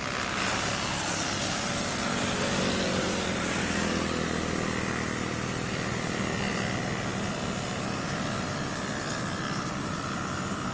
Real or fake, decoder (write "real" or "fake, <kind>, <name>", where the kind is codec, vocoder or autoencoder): real